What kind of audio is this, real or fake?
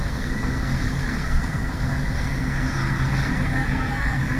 fake